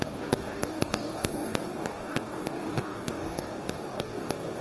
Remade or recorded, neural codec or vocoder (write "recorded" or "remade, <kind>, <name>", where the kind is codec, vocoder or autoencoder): remade, codec, DAC